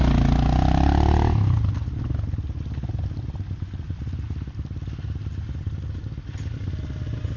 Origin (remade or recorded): recorded